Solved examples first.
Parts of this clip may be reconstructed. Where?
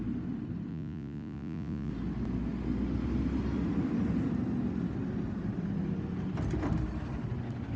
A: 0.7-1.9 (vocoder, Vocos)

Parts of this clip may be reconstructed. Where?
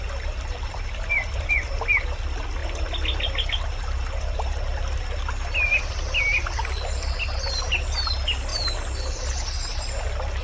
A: none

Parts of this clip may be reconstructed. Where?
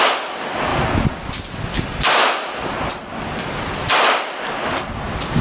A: none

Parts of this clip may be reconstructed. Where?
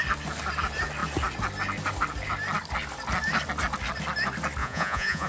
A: 4.6-5.3 (vocoder, Vocos)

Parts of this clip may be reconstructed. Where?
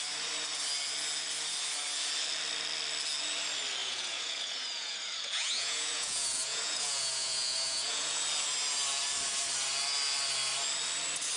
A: 3.8-8.2 (vocoder, Vocos)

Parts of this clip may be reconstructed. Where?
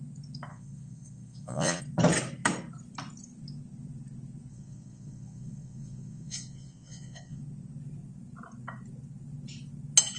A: 0.5-1.8 (vocoder, Vocos); 4.5-7.4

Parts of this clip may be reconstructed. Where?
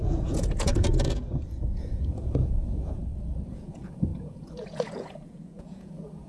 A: 0.0-3.0 (vocoder, Vocos); 3.5-6.3